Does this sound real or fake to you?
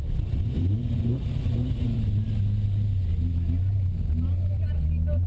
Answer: fake